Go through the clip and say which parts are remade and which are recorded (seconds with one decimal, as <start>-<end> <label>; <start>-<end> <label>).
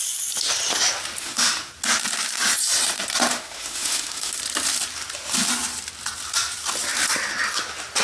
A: 0.0-1.2 recorded; 1.2-1.7 remade; 1.7-3.3 recorded; 3.3-4.4 remade; 4.4-8.0 recorded